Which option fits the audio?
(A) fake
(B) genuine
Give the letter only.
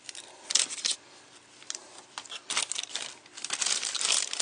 B